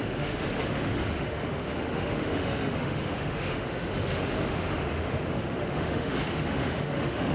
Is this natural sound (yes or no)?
no